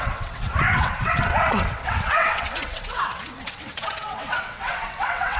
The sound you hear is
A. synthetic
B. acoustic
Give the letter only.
A